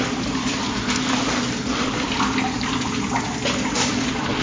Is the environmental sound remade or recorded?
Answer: recorded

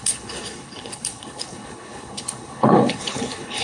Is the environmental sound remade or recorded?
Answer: remade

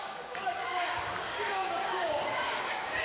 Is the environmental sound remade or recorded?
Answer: remade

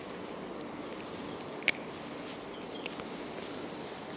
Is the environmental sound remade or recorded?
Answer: recorded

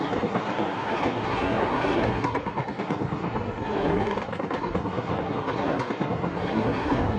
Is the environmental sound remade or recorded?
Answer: remade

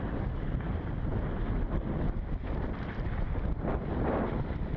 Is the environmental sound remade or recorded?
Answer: remade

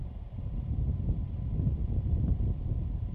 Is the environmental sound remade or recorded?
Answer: recorded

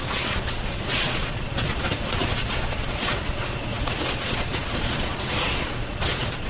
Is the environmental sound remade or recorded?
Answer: remade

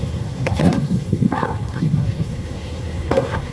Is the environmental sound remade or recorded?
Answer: remade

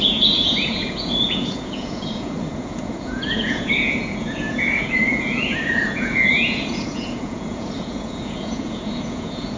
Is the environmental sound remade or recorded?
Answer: remade